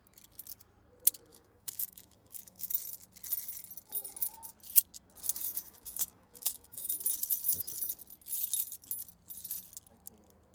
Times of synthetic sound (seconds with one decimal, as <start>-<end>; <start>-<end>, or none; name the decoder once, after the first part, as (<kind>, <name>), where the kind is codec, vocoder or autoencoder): 1.3-2.7 (codec, DAC); 5.4-6.9